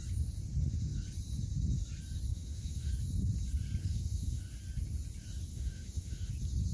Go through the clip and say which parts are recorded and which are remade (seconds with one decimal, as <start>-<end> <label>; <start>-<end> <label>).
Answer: 0.0-2.3 recorded; 2.3-2.9 remade; 2.9-3.8 recorded; 3.8-4.4 remade; 4.4-5.5 recorded; 5.5-6.3 remade; 6.3-6.7 recorded